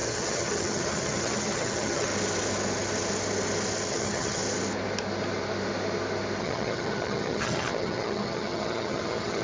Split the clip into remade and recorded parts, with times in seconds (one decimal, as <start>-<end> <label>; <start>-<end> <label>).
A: 0.0-2.1 remade; 2.1-3.9 recorded; 3.9-4.4 remade; 4.4-6.4 recorded; 6.4-9.4 remade